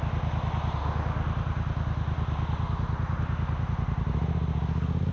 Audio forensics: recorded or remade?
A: recorded